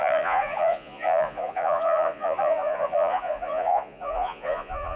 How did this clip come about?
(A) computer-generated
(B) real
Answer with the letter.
A